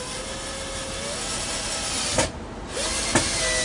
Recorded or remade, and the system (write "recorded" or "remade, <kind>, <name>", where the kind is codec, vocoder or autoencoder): recorded